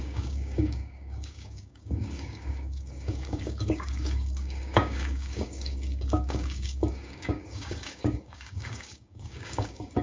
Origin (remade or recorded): remade